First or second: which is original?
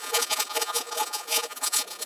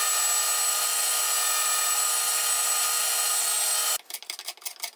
second